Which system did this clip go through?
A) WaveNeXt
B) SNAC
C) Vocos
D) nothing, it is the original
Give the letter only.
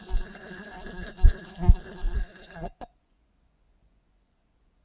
C